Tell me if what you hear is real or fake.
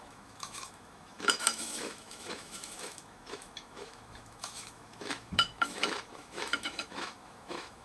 fake